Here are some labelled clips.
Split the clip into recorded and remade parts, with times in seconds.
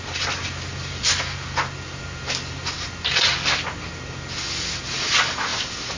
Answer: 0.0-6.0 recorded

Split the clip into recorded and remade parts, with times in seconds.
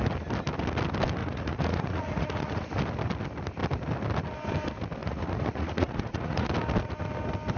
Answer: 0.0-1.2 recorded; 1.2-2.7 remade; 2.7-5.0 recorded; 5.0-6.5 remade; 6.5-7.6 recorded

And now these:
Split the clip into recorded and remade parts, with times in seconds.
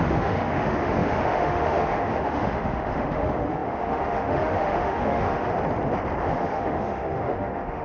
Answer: 0.0-5.5 remade; 5.5-6.2 recorded; 6.2-7.8 remade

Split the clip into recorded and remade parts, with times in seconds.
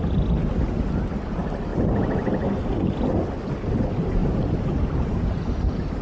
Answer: 0.0-1.7 recorded; 1.7-2.9 remade; 2.9-4.2 recorded; 4.2-6.0 remade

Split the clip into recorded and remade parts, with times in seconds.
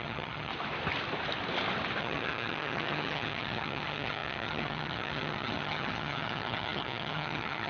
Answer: 0.0-0.5 remade; 0.5-2.0 recorded; 2.0-7.7 remade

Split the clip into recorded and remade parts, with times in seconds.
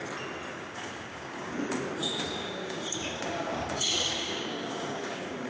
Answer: 0.0-0.5 recorded; 0.5-1.5 remade; 1.5-2.0 recorded; 2.0-5.5 remade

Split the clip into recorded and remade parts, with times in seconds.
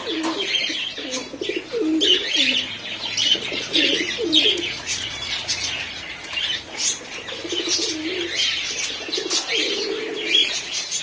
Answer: 0.0-3.2 recorded; 3.2-7.0 remade; 7.0-10.4 recorded; 10.4-11.0 remade